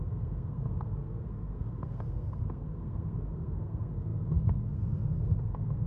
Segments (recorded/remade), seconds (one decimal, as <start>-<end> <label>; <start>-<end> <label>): 0.0-5.9 remade